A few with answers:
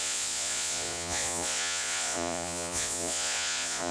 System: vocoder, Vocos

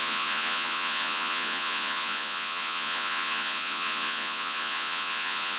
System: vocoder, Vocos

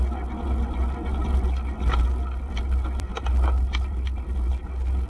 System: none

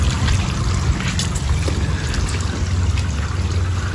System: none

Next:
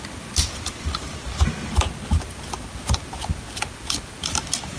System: none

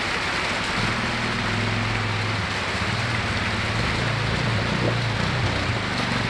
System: none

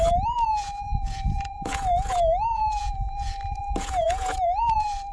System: vocoder, Vocos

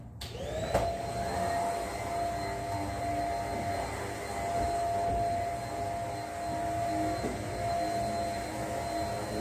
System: none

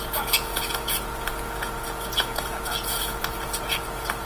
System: vocoder, Vocos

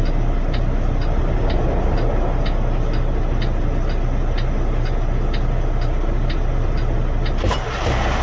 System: none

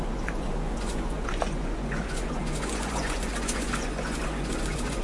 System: vocoder, Vocos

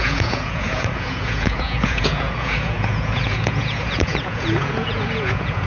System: vocoder, Vocos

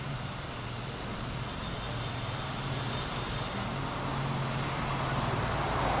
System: none